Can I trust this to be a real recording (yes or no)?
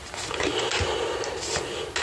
yes